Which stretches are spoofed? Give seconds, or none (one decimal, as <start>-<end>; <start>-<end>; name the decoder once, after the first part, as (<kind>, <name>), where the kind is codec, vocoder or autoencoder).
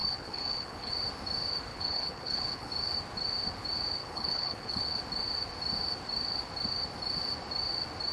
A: 0.0-0.9 (codec, HILCodec); 1.7-2.7; 4.0-5.0